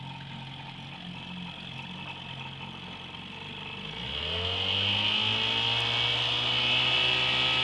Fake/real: real